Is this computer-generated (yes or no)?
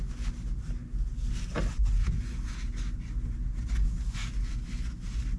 no